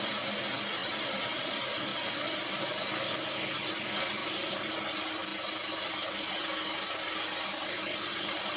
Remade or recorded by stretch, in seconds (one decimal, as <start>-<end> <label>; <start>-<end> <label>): 0.0-0.8 recorded; 0.8-1.5 remade; 1.5-1.9 recorded; 1.9-2.8 remade; 2.8-4.2 recorded; 4.2-4.7 remade; 4.7-8.6 recorded